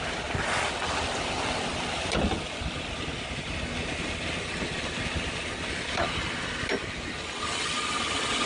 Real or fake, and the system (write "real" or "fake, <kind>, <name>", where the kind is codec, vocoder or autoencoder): real